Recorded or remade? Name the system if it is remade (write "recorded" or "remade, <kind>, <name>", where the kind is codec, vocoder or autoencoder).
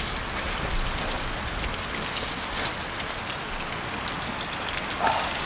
recorded